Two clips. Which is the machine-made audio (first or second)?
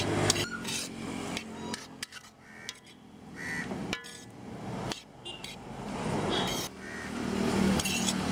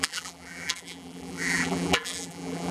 second